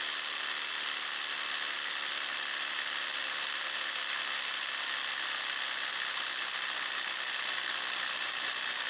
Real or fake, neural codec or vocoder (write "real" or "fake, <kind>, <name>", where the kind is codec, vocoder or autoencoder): real